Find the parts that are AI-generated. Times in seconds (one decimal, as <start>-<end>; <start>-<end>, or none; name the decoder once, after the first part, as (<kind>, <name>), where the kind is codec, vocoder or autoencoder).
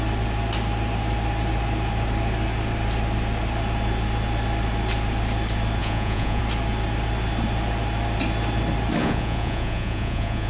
5.8-6.4 (vocoder, Vocos); 9.0-10.5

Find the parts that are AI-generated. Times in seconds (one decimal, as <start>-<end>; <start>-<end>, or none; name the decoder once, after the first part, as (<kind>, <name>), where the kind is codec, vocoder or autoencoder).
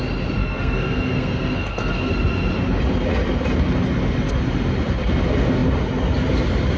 0.4-2.1 (codec, SNAC)